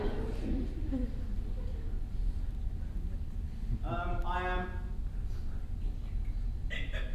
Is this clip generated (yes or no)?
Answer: no